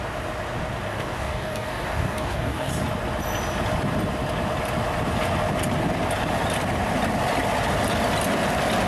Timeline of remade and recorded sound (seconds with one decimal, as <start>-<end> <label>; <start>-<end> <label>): 0.0-0.9 recorded; 0.9-2.7 remade; 2.7-8.9 recorded